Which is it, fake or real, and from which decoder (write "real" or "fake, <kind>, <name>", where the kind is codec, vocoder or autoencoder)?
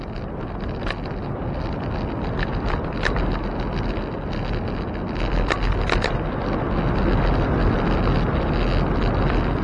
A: real